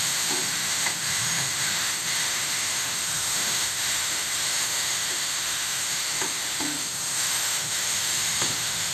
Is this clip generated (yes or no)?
yes